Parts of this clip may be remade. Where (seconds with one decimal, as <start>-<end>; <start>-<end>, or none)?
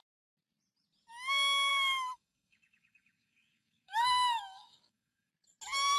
1.7-5.3